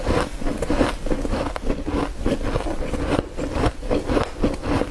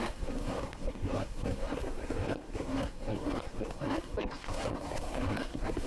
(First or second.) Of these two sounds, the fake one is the second